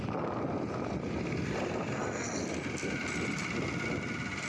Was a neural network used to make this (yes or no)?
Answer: no